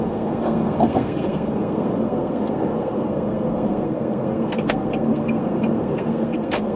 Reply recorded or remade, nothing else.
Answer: remade